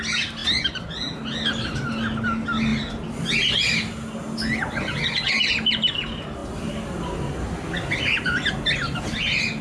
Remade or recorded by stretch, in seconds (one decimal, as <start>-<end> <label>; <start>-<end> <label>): 0.0-9.6 recorded